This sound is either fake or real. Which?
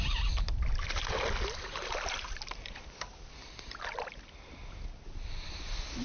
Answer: real